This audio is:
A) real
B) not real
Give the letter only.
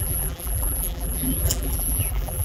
B